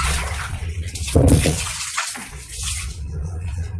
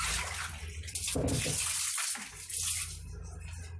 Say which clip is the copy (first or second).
first